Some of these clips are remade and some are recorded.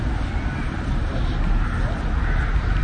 recorded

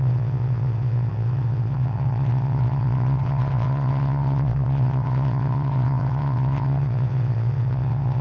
remade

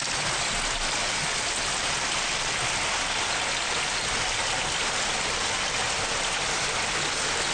recorded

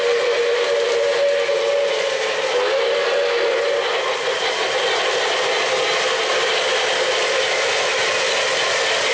recorded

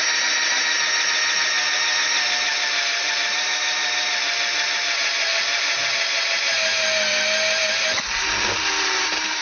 recorded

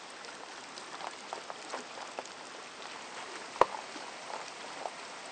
recorded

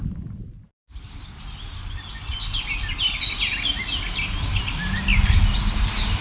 recorded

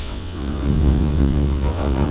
remade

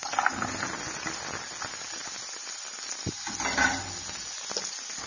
recorded